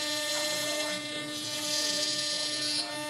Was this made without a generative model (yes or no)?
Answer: no